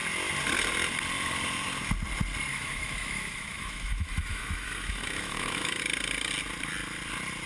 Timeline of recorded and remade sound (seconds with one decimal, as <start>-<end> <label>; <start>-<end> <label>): 0.0-2.5 recorded; 2.5-5.8 remade; 5.8-7.5 recorded